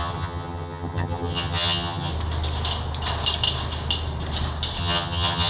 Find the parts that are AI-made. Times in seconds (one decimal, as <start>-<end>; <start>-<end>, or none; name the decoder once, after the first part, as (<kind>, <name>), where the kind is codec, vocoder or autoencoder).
0.0-2.1 (vocoder, HiFi-GAN); 4.8-5.5